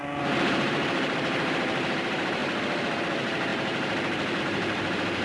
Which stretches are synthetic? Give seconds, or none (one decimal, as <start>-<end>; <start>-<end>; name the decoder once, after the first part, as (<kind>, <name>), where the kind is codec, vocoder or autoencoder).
0.5-2.4 (vocoder, BigVGAN v2); 3.0-3.5; 4.4-5.2